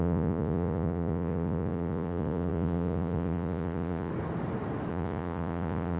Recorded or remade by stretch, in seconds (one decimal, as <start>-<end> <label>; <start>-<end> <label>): 0.0-4.1 remade; 4.1-4.9 recorded; 4.9-6.0 remade